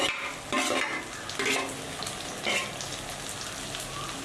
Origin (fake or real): real